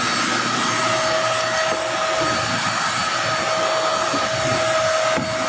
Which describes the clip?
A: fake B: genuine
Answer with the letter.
B